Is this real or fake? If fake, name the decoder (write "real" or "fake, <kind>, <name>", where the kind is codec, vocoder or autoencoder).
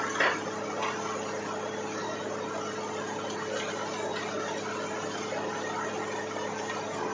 real